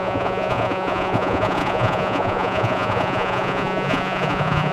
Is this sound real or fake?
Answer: fake